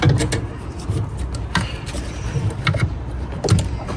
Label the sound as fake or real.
real